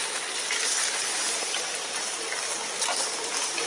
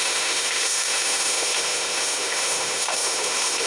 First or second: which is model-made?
second